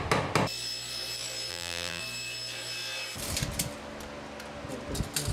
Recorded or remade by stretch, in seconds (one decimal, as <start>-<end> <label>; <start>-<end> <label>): 0.0-1.5 recorded; 1.5-2.0 remade; 2.0-5.3 recorded